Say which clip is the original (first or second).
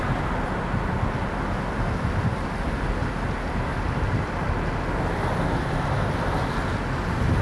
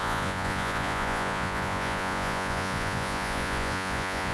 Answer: first